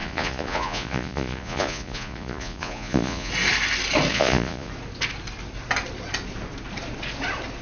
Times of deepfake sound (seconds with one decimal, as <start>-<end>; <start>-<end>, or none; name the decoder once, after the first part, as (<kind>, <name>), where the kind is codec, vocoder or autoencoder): 0.0-3.3 (vocoder, Vocos); 4.1-4.7

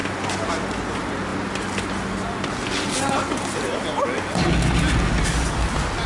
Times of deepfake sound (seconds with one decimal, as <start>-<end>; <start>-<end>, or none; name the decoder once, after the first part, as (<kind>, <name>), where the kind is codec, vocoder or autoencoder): none

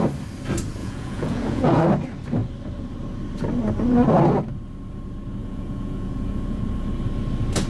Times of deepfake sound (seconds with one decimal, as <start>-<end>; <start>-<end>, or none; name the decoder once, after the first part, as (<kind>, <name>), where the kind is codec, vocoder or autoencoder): 0.8-1.8 (vocoder, Vocos); 5.4-6.6

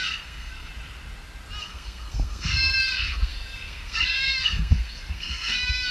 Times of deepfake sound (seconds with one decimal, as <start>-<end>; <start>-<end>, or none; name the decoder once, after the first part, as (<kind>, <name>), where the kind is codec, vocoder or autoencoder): 0.0-0.7 (codec, SNAC); 1.6-5.9

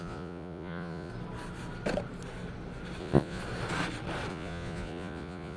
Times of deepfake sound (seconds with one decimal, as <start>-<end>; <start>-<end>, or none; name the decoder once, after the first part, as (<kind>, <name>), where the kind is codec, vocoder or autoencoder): 0.0-1.1 (vocoder, Vocos); 3.0-3.4; 4.3-5.6